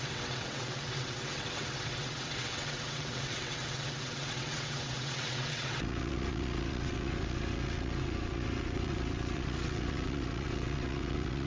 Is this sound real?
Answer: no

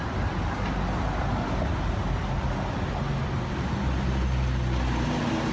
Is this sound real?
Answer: yes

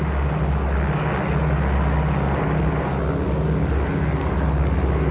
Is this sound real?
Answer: yes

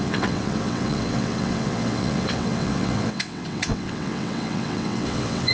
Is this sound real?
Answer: no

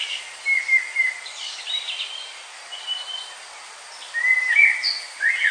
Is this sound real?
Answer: yes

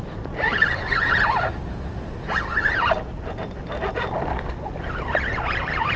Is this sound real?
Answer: yes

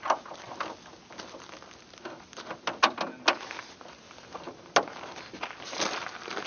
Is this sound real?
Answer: yes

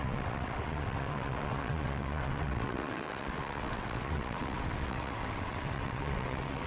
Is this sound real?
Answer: no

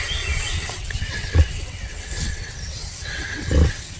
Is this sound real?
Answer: no